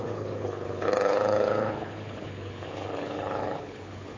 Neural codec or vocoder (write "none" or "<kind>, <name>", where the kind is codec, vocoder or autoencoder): codec, HILCodec